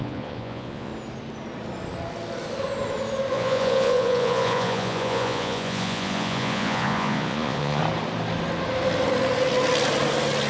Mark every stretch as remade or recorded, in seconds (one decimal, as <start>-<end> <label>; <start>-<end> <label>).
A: 0.0-0.9 remade; 0.9-3.3 recorded; 3.3-7.8 remade; 7.8-10.5 recorded